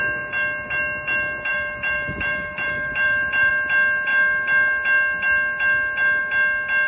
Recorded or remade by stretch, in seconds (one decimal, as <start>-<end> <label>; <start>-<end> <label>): 0.0-1.5 recorded; 1.5-3.5 remade; 3.5-6.9 recorded